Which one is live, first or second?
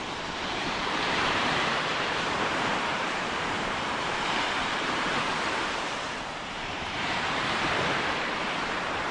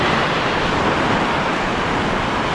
second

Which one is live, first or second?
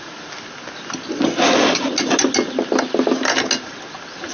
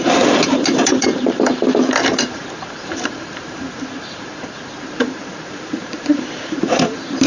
first